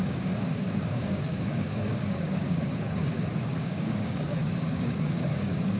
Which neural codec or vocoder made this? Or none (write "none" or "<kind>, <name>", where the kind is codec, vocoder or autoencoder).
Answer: codec, DAC